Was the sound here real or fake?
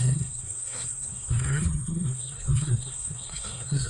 fake